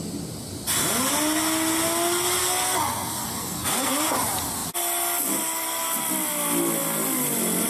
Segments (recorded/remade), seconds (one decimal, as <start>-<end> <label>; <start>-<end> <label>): 0.0-2.4 recorded; 2.4-3.9 remade; 3.9-7.7 recorded